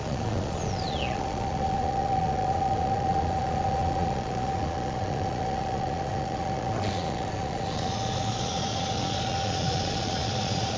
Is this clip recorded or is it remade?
remade